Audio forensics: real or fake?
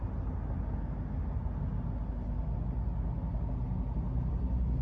real